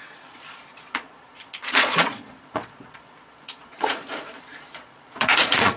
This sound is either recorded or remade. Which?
remade